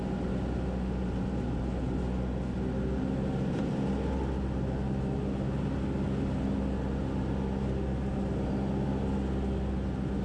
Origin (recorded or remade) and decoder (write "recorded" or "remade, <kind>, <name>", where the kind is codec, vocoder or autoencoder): recorded